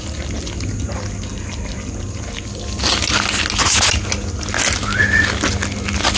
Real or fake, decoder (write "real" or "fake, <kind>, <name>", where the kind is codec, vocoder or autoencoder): real